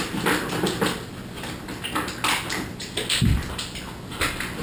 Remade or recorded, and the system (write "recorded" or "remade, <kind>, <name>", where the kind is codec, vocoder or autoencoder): recorded